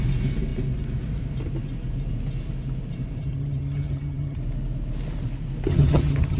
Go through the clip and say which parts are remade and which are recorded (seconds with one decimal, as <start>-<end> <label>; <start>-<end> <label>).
0.0-3.2 recorded; 3.2-4.4 remade; 4.4-5.7 recorded; 5.7-6.4 remade